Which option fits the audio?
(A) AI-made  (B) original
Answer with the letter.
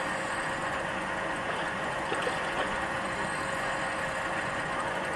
A